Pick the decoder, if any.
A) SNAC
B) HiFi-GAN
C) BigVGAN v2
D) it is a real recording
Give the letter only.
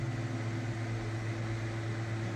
D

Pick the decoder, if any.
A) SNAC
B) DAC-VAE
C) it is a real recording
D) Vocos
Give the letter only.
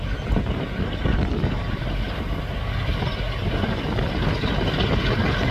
C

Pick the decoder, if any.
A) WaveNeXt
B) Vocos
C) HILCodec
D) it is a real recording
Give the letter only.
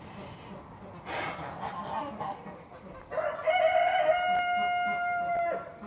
D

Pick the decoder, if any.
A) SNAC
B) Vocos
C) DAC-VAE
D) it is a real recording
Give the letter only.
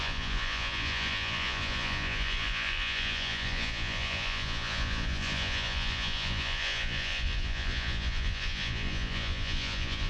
B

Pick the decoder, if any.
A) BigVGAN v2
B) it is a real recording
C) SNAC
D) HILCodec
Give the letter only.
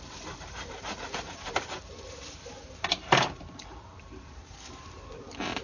A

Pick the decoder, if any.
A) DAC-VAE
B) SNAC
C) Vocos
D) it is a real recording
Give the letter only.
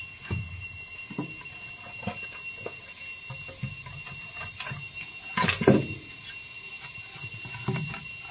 D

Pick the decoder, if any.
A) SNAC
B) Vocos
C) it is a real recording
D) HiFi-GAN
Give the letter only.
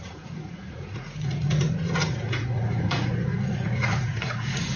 B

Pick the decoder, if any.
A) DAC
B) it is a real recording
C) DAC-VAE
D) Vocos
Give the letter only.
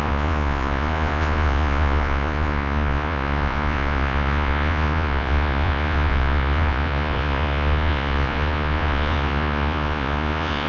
D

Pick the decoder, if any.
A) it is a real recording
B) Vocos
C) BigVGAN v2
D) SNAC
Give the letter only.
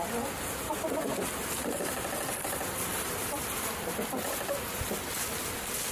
A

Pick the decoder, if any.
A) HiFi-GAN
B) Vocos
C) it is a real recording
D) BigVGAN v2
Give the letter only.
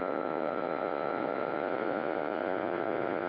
B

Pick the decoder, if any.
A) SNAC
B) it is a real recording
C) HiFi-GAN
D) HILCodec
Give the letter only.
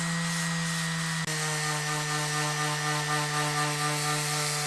B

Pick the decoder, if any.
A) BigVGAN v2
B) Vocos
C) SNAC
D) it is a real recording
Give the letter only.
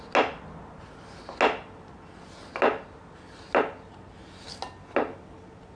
D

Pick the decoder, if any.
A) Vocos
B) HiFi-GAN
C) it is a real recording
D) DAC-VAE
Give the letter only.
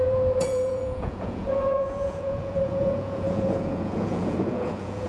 A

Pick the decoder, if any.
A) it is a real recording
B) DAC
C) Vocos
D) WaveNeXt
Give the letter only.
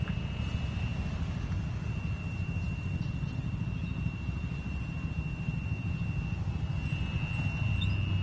A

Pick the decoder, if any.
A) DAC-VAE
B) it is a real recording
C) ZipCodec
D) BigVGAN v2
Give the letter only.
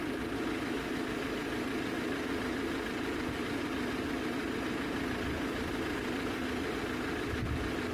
B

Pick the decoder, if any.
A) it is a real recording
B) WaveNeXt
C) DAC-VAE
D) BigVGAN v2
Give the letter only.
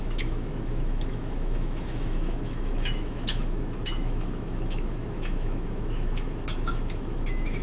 C